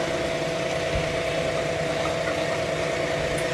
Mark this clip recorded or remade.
recorded